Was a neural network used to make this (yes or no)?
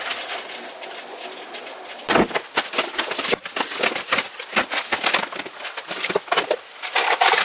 no